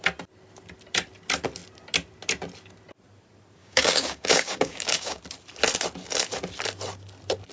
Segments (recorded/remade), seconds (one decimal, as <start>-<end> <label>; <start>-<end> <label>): 0.0-3.6 recorded; 3.6-5.2 remade; 5.2-7.5 recorded